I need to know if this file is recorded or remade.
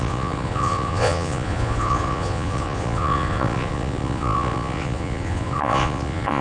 remade